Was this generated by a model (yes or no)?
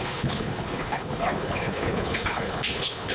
yes